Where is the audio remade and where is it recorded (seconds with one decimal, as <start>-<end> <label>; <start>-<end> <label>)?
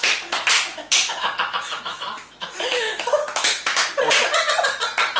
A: 0.0-0.7 recorded; 0.7-3.8 remade; 3.8-5.2 recorded